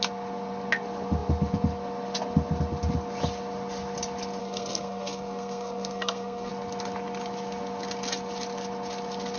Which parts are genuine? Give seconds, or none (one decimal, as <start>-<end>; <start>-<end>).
0.0-4.4; 6.5-9.4

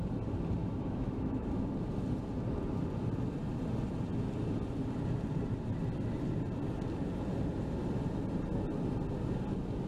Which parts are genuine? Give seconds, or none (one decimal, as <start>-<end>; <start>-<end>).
0.0-0.6; 1.5-9.9

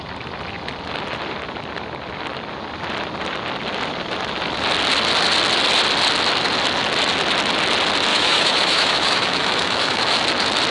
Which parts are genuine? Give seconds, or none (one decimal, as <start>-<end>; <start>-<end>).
0.0-8.1; 10.2-10.7

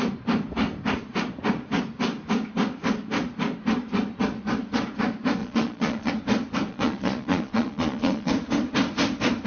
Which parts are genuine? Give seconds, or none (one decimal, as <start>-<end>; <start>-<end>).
0.0-5.4; 6.1-6.7; 8.3-9.5

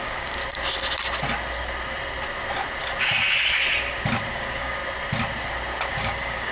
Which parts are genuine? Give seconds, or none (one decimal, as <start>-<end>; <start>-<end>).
0.4-4.3; 4.8-5.9

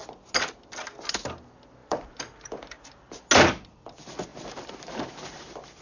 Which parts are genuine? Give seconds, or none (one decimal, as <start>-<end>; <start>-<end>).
0.0-1.8; 3.0-4.3

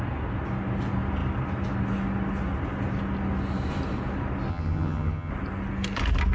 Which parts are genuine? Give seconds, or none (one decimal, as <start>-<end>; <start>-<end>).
0.0-4.5; 5.3-6.3

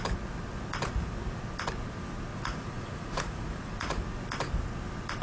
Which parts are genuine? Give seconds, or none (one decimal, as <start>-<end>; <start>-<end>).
0.0-2.3; 4.0-5.2